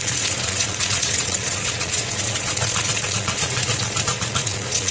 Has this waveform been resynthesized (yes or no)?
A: yes